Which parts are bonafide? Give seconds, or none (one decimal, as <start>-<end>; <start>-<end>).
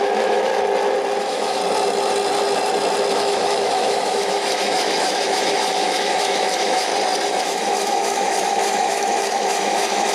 0.5-1.2; 1.6-3.1; 6.9-7.4